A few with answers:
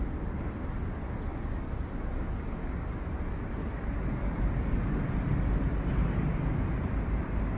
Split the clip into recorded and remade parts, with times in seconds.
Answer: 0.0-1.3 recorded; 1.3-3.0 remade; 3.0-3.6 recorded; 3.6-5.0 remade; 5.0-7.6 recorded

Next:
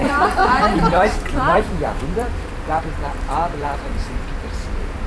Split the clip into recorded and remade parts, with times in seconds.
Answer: 0.0-0.4 recorded; 0.4-2.8 remade; 2.8-3.6 recorded; 3.6-4.2 remade; 4.2-5.1 recorded

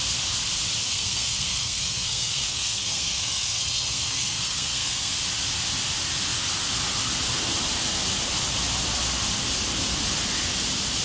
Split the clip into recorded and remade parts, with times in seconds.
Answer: 0.0-0.9 recorded; 0.9-5.1 remade; 5.1-11.0 recorded

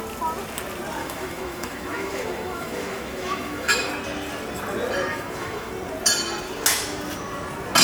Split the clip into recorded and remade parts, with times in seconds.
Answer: 0.0-1.0 recorded; 1.0-3.9 remade; 3.9-5.1 recorded; 5.1-5.7 remade; 5.7-7.8 recorded

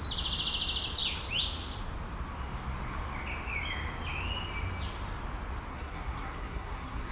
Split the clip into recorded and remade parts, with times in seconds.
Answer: 0.0-5.7 recorded; 5.7-7.1 remade

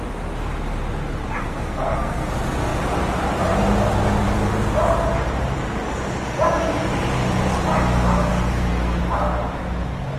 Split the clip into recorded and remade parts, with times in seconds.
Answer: 0.0-1.4 recorded; 1.4-2.3 remade; 2.3-8.3 recorded; 8.3-9.0 remade; 9.0-10.2 recorded